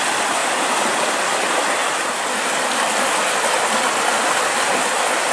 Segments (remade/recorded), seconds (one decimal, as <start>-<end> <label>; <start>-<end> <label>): 0.0-5.3 recorded